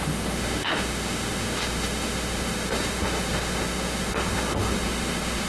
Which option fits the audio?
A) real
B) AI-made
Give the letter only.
B